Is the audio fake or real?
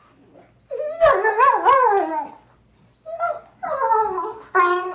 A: real